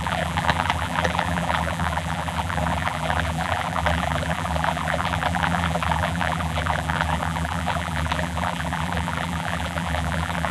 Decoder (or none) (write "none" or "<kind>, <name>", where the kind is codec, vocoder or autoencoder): vocoder, BigVGAN v2